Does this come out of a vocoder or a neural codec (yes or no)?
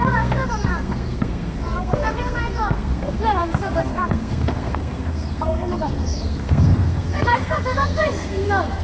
yes